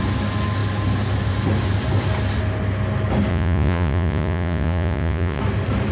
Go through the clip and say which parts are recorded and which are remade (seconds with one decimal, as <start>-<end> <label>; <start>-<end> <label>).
0.0-3.3 recorded; 3.3-5.4 remade; 5.4-5.9 recorded